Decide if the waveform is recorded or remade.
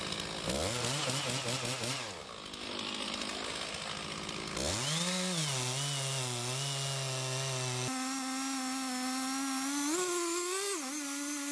recorded